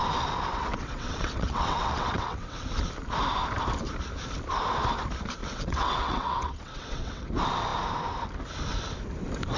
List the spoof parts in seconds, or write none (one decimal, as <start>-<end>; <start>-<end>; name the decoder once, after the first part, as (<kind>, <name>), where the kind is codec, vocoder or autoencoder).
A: 0.5-2.7 (vocoder, WaveNeXt); 5.4-7.3